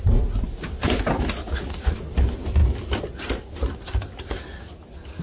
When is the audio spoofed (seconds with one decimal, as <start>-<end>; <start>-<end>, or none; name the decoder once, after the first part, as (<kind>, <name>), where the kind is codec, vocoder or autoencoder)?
1.4-2.0 (vocoder, Vocos)